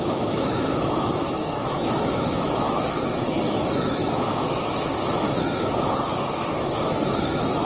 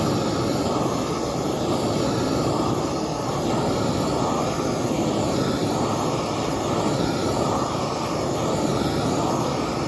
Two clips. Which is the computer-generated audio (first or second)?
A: first